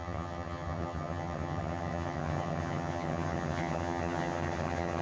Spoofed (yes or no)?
yes